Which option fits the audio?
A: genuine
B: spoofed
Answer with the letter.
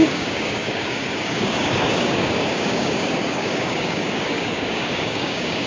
B